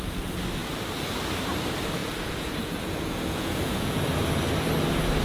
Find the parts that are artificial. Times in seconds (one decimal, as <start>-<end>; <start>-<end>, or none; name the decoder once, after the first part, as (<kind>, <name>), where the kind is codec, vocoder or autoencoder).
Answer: 2.0-4.0 (vocoder, Vocos)